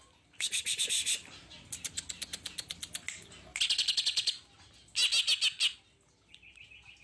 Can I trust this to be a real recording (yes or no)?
yes